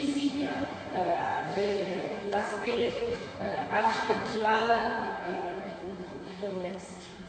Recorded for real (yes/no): no